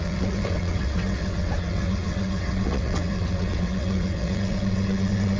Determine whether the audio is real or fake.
fake